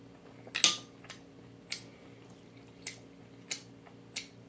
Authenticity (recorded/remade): recorded